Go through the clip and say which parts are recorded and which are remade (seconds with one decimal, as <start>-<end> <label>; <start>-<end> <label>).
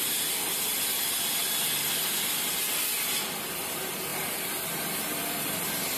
0.0-0.7 remade; 0.7-3.5 recorded; 3.5-6.0 remade